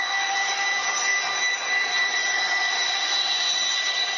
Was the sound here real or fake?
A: real